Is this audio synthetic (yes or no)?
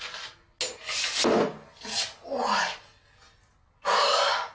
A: no